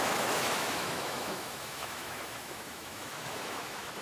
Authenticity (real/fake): fake